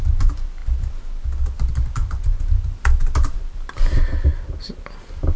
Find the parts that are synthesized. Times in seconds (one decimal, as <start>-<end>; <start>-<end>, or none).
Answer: none

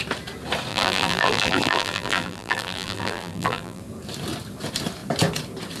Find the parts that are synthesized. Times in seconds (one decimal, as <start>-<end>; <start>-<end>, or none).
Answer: 0.7-3.8

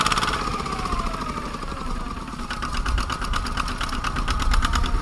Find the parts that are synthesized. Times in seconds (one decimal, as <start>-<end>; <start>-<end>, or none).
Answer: 0.5-2.8